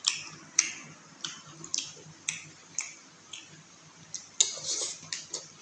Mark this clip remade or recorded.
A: recorded